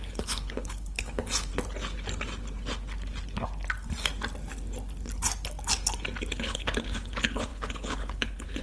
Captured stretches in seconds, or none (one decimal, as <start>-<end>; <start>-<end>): 1.5-6.3